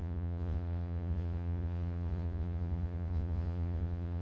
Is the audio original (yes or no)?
no